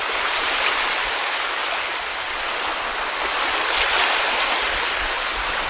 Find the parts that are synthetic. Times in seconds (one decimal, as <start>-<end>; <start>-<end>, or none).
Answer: 0.0-1.6; 5.0-5.7

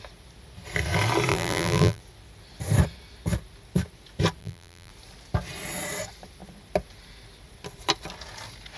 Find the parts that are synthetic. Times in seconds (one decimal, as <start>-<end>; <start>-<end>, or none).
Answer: 1.3-2.0; 4.4-4.9

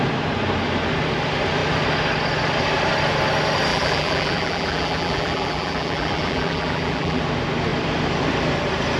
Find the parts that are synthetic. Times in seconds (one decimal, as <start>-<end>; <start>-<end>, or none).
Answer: 3.7-7.2

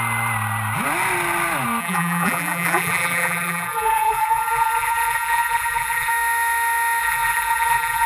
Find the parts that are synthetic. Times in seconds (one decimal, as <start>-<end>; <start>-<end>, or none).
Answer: 1.8-6.1; 7.0-8.1

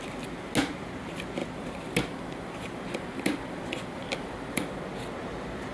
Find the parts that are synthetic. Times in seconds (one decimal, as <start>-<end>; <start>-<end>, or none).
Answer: 1.4-4.8